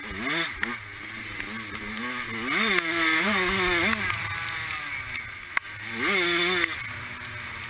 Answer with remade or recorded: recorded